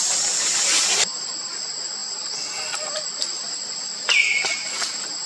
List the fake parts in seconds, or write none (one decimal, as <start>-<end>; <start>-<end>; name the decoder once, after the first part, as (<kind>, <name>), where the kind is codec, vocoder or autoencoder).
none